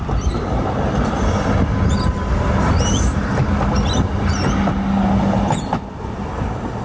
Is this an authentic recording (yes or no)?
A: yes